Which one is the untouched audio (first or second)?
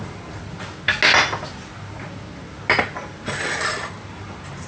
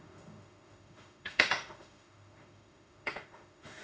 first